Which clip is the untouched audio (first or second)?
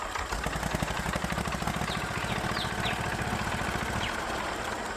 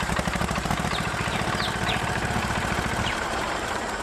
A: first